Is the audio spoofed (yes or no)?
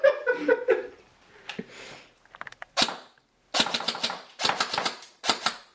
no